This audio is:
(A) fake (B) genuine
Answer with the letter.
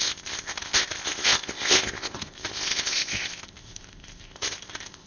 A